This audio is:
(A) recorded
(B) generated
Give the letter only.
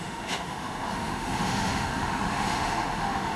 B